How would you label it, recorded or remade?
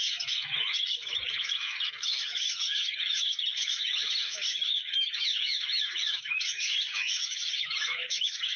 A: remade